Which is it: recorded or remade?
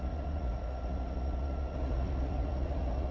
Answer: remade